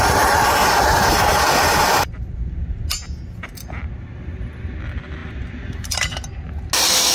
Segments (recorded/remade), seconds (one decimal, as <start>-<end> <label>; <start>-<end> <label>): 0.0-7.1 recorded